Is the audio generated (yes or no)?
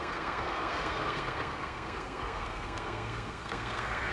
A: yes